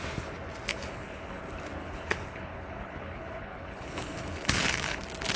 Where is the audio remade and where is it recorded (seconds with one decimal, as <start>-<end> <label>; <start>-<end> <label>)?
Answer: 0.0-0.7 recorded; 0.7-1.4 remade; 1.4-1.8 recorded; 1.8-5.0 remade; 5.0-5.4 recorded